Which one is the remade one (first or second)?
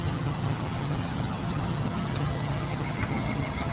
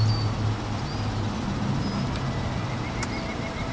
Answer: first